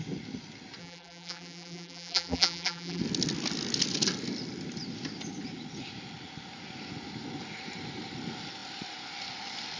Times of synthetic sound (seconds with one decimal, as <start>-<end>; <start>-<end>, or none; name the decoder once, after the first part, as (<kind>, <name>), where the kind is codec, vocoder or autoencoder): 0.8-3.0 (vocoder, BigVGAN v2)